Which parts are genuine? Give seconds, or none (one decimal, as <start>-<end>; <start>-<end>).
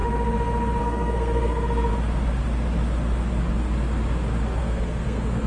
0.0-0.8; 1.9-4.6